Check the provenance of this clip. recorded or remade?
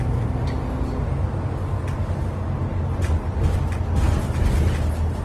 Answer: recorded